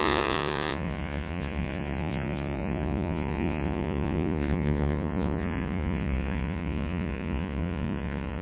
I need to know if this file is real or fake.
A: fake